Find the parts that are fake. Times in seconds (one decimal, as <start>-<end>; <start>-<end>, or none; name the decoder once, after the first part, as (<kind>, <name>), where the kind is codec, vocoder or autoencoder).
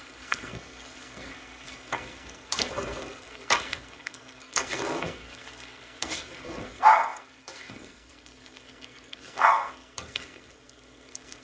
0.0-11.4 (codec, SNAC)